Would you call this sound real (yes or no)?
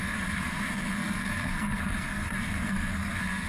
no